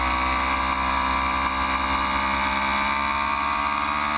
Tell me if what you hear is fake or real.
real